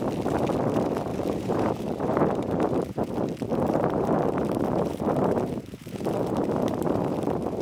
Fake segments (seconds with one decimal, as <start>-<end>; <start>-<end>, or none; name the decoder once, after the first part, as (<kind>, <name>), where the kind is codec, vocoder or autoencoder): 1.1-3.0 (vocoder, BigVGAN v2); 3.5-6.9